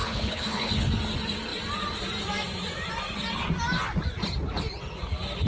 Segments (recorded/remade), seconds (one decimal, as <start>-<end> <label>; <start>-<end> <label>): 0.0-0.9 remade; 0.9-5.5 recorded